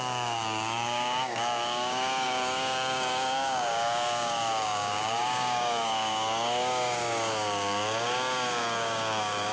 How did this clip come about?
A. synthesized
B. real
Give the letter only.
A